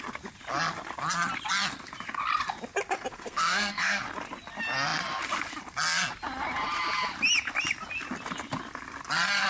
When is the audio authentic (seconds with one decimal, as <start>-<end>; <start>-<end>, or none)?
0.0-3.1; 4.0-9.5